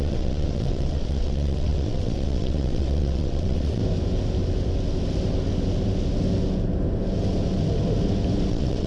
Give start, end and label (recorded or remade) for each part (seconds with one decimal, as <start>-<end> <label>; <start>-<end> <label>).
0.0-3.8 remade; 3.8-8.5 recorded; 8.5-8.9 remade